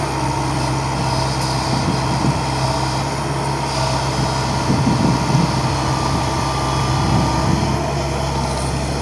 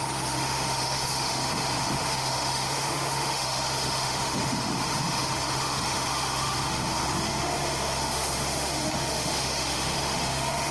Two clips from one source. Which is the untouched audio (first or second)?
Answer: first